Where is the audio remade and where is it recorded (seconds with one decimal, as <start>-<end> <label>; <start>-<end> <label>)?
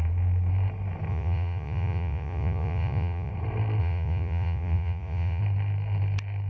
0.0-1.1 recorded; 1.1-3.3 remade; 3.3-3.8 recorded; 3.8-5.4 remade; 5.4-6.5 recorded